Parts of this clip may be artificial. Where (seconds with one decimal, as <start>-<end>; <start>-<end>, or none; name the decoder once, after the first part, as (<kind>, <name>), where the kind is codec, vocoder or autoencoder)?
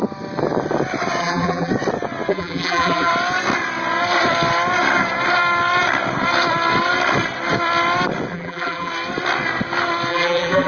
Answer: 1.2-1.7 (vocoder, BigVGAN v2); 2.3-3.1; 8.3-8.9; 10.1-10.7